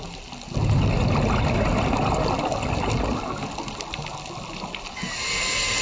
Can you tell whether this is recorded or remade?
recorded